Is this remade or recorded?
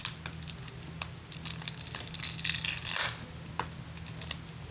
recorded